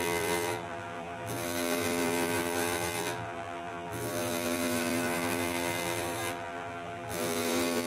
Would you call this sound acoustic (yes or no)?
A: no